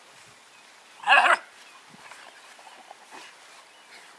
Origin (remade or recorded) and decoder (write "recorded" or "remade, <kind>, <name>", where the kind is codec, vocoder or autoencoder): recorded